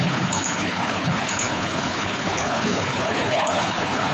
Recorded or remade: remade